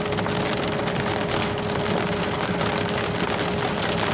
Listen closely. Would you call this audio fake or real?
real